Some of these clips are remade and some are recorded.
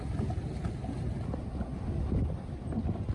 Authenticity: recorded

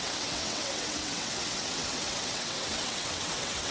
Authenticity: remade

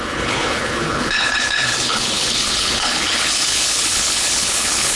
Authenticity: remade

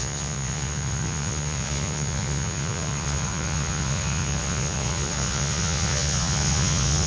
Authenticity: remade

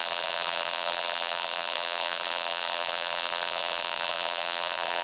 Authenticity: remade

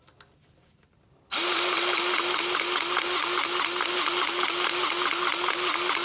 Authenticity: recorded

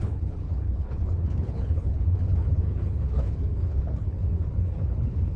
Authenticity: remade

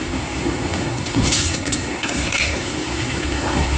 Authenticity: remade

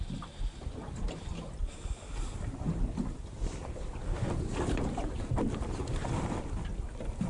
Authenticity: recorded